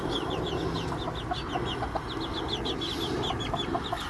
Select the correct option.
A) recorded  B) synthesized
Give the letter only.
A